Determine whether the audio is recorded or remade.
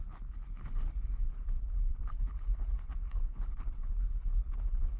remade